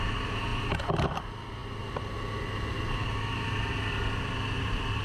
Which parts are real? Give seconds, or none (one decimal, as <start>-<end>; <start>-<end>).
0.0-5.0